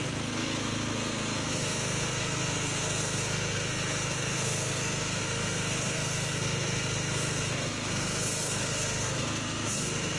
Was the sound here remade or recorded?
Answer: remade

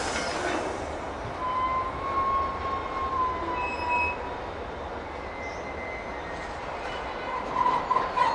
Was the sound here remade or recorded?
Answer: recorded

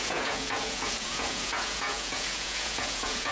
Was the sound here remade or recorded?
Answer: remade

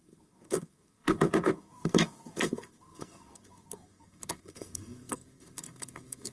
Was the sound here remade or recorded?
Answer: remade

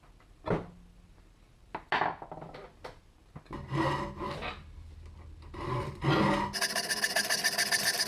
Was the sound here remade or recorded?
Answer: recorded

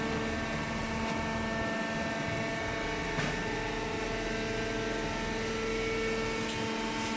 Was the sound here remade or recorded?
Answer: recorded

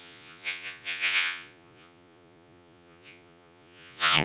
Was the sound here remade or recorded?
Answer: remade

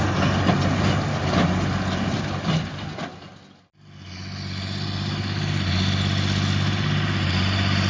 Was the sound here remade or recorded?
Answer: recorded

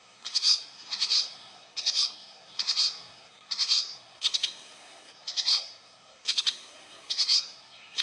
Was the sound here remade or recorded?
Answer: remade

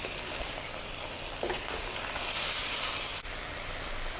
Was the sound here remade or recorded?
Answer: recorded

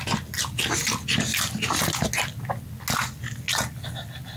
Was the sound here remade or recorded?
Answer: recorded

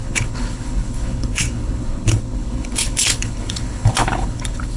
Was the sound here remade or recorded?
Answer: remade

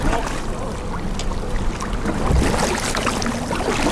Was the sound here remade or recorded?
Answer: recorded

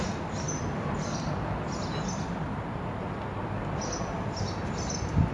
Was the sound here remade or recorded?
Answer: recorded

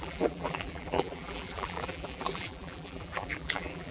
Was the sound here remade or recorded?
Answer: remade